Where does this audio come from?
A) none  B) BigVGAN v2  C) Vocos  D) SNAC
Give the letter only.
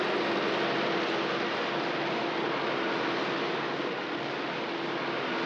A